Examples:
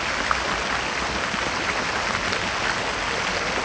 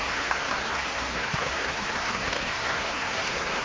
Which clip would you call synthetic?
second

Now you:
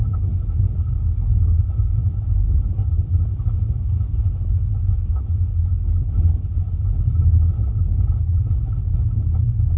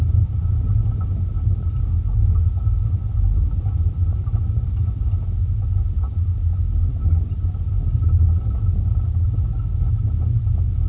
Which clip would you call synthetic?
first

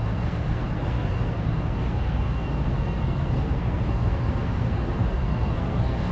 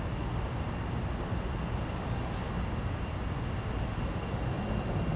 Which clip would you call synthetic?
first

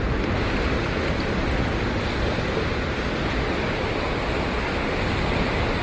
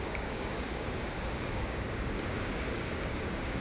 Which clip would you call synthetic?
second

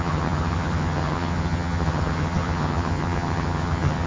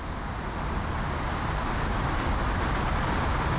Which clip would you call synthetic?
first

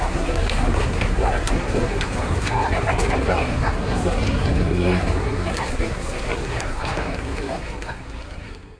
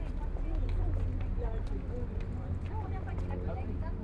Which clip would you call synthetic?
first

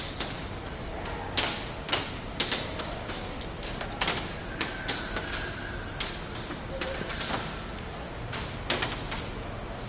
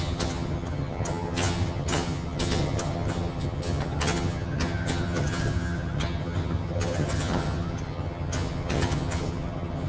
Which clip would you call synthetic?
second